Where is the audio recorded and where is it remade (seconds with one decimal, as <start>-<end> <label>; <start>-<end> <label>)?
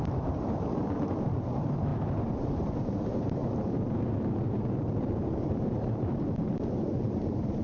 0.0-7.6 remade